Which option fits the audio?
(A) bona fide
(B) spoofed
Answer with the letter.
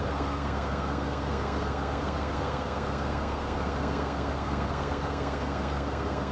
B